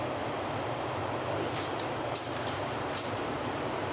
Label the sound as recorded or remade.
remade